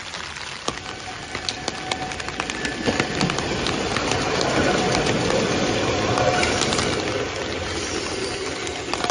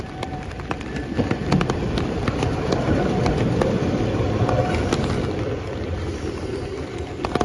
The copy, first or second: second